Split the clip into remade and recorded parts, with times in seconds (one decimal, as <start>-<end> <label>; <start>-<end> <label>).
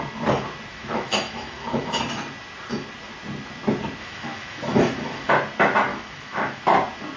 0.0-0.7 recorded; 0.7-2.0 remade; 2.0-4.0 recorded; 4.0-5.3 remade; 5.3-5.9 recorded; 5.9-6.6 remade; 6.6-7.2 recorded